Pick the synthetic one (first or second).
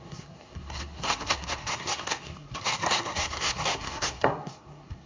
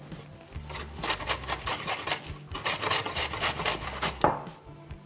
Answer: first